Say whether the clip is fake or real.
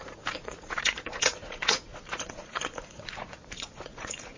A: fake